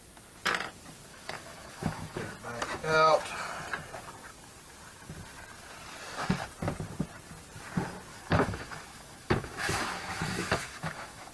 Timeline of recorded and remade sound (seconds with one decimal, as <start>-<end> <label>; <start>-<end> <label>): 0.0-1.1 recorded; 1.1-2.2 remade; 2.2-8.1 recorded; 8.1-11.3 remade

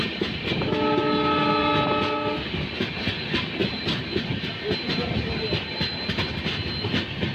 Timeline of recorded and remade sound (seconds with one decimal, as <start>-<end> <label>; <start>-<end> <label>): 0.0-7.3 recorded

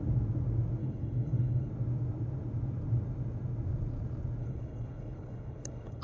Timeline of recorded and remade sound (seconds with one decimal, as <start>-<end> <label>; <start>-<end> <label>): 0.0-0.8 recorded; 0.8-1.7 remade; 1.7-4.4 recorded; 4.4-6.0 remade

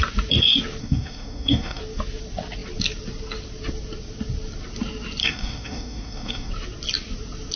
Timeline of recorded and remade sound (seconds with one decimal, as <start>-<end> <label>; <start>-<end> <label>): 0.0-0.8 recorded; 0.8-1.8 remade; 1.8-5.2 recorded; 5.2-6.5 remade; 6.5-7.6 recorded

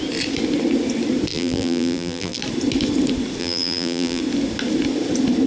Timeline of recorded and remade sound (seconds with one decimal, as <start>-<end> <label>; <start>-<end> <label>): 0.0-1.3 recorded; 1.3-2.4 remade; 2.4-3.4 recorded; 3.4-4.2 remade; 4.2-5.5 recorded